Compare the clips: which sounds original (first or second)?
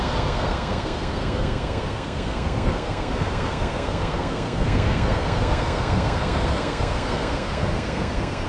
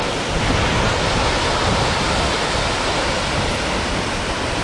second